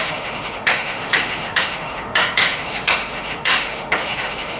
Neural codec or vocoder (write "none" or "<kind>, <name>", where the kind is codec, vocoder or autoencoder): autoencoder, DAC-VAE